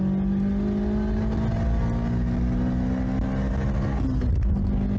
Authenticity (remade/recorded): recorded